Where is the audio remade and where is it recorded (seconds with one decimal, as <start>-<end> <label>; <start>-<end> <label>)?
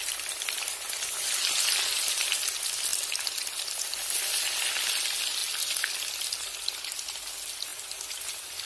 0.0-8.7 recorded